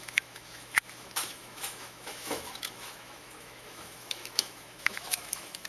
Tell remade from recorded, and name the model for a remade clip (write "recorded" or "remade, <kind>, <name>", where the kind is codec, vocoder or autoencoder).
remade, autoencoder, DAC-VAE